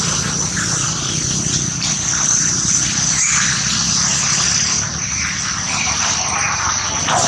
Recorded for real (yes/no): yes